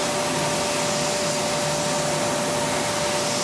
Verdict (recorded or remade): recorded